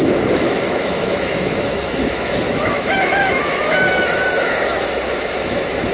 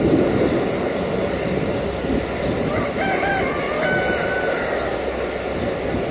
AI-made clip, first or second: first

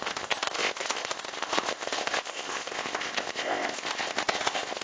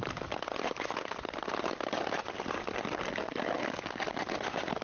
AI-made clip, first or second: first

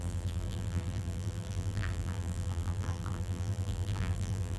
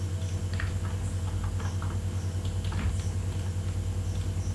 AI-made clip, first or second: first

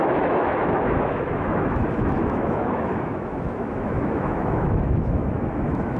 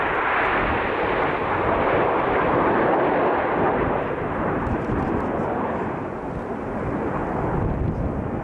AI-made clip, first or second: first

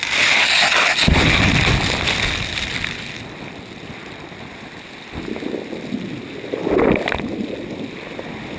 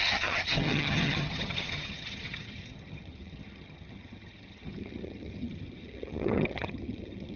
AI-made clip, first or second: second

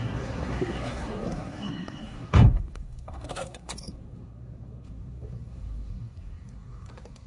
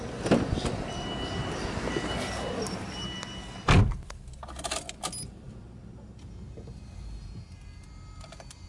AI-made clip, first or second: first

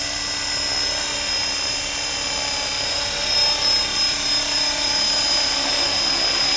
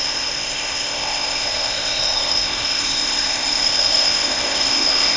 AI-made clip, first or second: second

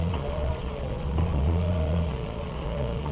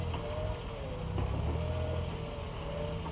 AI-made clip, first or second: first